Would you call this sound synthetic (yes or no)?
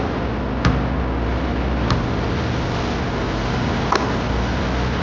no